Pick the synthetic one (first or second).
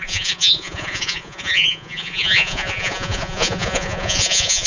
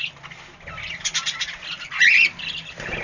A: first